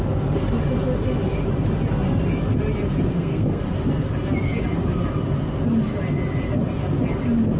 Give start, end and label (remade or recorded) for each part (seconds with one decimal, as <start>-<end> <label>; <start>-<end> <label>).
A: 0.0-3.1 recorded; 3.1-3.6 remade; 3.6-7.6 recorded